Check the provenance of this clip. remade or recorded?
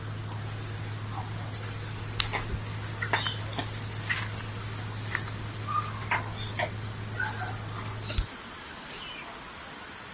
recorded